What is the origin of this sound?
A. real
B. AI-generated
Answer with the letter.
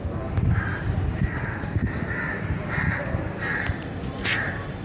A